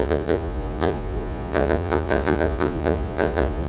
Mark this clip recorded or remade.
remade